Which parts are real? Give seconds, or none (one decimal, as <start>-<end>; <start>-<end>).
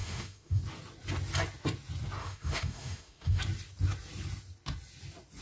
0.6-2.2; 3.4-5.4